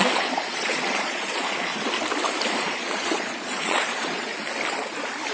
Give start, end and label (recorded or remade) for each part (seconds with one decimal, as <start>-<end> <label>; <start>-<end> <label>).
0.0-1.7 remade; 1.7-2.6 recorded; 2.6-4.3 remade; 4.3-5.3 recorded